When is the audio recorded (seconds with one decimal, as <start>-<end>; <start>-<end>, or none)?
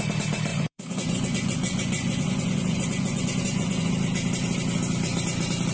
0.0-0.5; 3.9-5.7